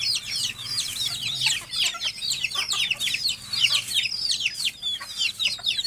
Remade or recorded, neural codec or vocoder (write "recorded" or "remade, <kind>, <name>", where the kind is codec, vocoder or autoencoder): remade, vocoder, BigVGAN v2